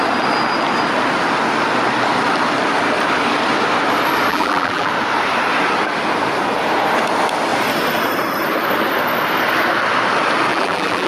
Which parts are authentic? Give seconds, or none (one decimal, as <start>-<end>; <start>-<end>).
0.0-4.3; 4.9-10.5